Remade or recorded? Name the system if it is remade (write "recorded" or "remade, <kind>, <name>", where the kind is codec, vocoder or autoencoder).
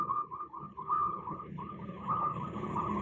remade, codec, HILCodec